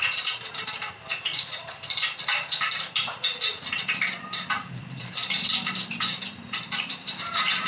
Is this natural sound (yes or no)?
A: no